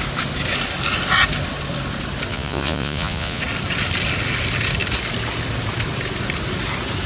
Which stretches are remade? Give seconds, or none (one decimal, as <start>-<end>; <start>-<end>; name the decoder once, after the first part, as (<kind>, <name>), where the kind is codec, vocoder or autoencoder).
2.3-3.4 (vocoder, Vocos)